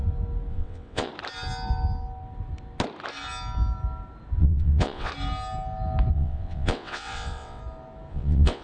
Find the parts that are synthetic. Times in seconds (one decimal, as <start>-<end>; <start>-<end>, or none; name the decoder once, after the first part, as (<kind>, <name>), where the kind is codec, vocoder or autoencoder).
0.5-1.1 (vocoder, WaveNeXt); 4.4-5.1; 6.1-7.6; 8.1-8.6

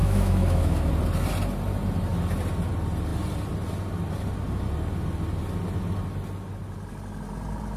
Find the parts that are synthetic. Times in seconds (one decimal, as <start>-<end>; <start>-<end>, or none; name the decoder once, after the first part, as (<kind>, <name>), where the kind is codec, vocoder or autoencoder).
0.0-0.9 (autoencoder, DAC-VAE)

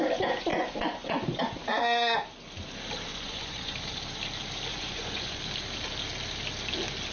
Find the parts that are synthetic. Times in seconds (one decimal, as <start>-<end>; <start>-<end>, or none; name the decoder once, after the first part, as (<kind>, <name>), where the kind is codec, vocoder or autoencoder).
3.1-3.7 (vocoder, Vocos); 4.7-5.4

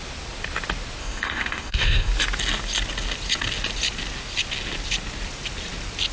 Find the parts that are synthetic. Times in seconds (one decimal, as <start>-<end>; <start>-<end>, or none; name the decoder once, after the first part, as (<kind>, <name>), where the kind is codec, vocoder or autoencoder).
1.0-2.1 (codec, ZipCodec)

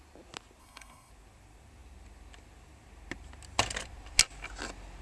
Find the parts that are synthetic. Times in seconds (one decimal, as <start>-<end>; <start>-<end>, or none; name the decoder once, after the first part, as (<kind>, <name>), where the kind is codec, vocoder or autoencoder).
0.6-1.1 (codec, SNAC)

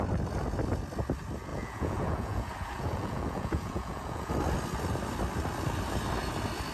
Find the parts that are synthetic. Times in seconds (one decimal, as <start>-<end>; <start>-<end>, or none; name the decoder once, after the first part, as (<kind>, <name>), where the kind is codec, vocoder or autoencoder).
1.5-4.3 (vocoder, Vocos)

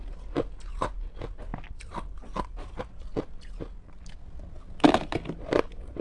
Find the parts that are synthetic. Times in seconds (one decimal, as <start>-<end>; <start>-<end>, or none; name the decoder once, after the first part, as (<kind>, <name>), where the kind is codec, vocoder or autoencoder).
none

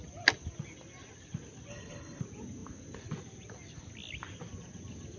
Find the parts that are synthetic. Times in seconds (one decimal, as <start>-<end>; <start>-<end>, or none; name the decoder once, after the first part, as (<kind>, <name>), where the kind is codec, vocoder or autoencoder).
1.7-2.2 (codec, HILCodec)